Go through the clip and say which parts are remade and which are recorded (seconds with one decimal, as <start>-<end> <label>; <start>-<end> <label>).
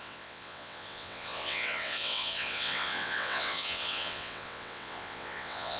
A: 0.0-5.8 remade